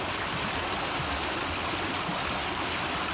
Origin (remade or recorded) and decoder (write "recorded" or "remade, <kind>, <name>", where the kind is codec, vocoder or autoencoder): recorded